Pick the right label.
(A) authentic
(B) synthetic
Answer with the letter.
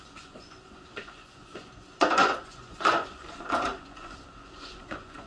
B